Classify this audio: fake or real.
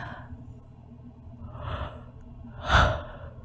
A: real